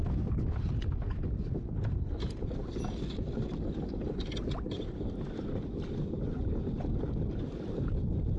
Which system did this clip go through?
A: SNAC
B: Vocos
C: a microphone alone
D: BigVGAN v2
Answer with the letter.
C